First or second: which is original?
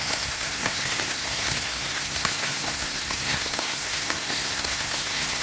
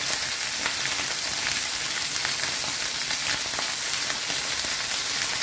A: second